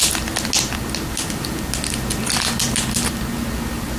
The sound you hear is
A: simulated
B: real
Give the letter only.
B